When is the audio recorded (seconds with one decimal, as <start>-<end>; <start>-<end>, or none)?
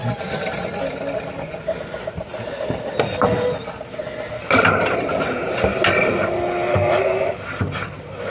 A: 0.0-8.3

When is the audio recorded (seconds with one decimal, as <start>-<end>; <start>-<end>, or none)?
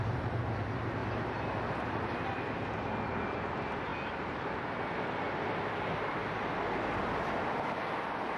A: 0.0-8.4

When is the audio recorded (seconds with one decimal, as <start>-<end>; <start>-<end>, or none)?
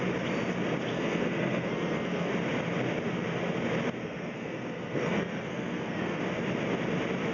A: 0.0-0.9; 2.3-4.0; 6.2-7.3